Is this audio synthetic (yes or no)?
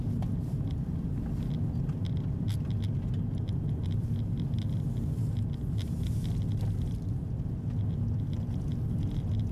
no